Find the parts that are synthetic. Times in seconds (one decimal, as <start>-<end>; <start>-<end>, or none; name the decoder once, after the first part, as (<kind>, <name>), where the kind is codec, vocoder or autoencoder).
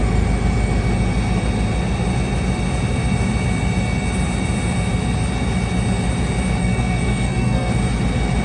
6.6-7.7 (codec, SNAC)